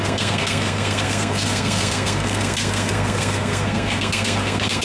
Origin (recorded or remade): remade